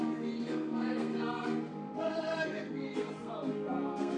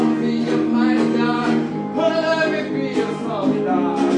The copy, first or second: first